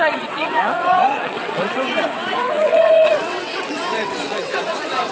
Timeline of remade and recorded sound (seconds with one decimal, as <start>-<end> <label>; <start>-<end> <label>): 0.0-5.1 remade